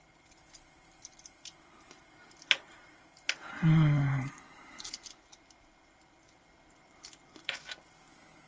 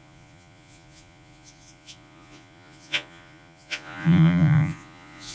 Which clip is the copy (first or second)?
second